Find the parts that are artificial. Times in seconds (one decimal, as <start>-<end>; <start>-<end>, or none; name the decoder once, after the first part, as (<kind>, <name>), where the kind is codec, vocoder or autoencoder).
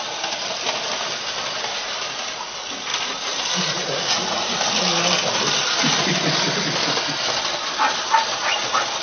none